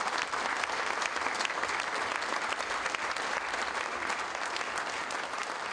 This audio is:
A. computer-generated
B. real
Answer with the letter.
B